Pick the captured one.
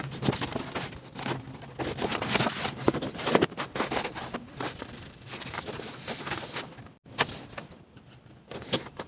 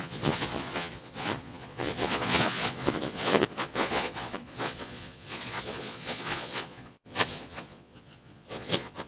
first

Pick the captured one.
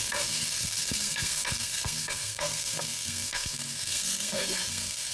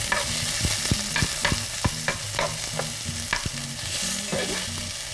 second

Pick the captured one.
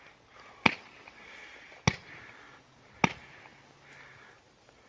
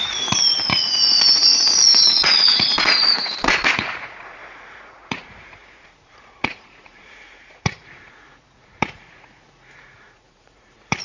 first